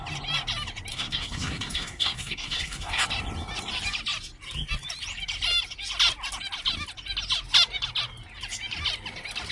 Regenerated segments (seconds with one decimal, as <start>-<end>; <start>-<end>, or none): 0.9-3.0